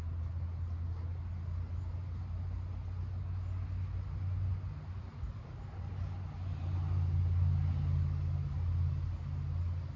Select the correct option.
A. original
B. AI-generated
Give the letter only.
A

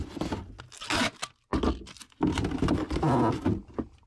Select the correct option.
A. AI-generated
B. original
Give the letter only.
B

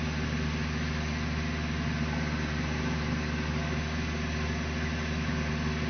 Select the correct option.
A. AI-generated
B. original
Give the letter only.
B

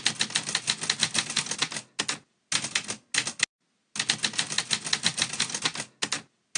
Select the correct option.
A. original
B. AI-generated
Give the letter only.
A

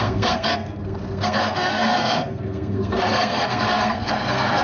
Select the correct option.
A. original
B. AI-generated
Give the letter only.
B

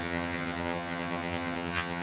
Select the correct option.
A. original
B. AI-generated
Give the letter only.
B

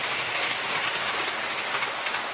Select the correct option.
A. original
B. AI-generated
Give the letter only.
A